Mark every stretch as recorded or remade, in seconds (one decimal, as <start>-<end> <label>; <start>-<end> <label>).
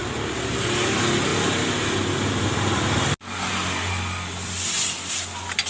0.0-5.7 recorded